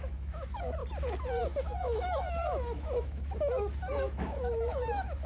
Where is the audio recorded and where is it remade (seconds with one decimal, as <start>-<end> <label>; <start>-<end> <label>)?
0.0-0.8 remade; 0.8-1.4 recorded; 1.4-5.3 remade